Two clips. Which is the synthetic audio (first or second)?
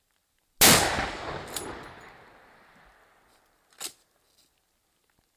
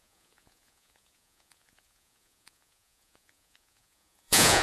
second